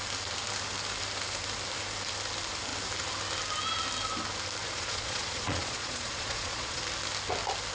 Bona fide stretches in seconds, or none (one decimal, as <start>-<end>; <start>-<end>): 0.0-4.6; 6.8-7.7